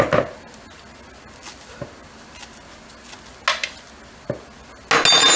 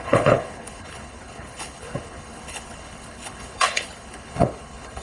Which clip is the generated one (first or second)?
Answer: second